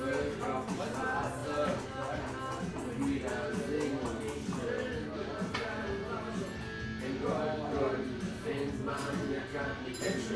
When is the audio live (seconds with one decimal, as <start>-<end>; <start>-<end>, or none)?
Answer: 0.0-10.4